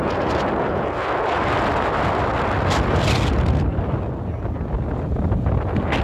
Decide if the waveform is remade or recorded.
recorded